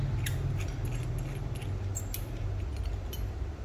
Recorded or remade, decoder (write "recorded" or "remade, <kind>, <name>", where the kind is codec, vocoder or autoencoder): recorded